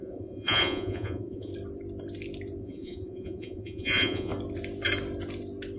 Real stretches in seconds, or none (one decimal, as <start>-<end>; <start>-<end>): 1.5-2.6; 4.3-5.8